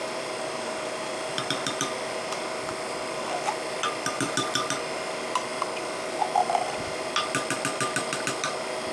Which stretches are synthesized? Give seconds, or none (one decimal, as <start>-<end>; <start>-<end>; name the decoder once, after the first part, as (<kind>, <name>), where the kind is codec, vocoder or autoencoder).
0.0-5.5 (vocoder, BigVGAN v2); 6.2-8.9

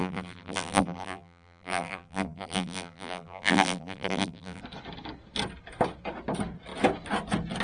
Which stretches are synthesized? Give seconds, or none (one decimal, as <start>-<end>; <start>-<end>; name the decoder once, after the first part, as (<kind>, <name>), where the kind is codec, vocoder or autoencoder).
0.0-4.6 (vocoder, BigVGAN v2)

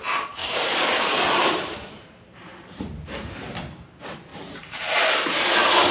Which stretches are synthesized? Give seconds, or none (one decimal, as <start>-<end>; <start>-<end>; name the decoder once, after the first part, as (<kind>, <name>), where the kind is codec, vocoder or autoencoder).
0.4-3.9 (vocoder, BigVGAN v2); 4.3-5.5

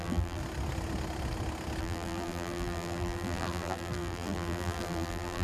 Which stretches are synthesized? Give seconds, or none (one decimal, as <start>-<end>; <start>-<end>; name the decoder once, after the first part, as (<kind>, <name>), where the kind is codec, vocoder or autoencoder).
0.0-0.4 (vocoder, BigVGAN v2); 1.8-5.4

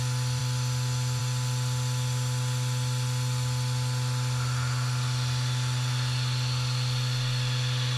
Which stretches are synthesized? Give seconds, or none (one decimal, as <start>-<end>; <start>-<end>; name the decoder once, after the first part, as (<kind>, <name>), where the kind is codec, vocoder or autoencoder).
none

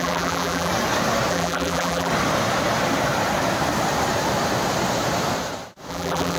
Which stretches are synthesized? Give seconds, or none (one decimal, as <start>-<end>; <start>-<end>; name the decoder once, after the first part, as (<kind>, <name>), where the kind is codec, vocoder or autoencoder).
0.0-0.7 (vocoder, BigVGAN v2); 1.3-2.1; 5.9-6.4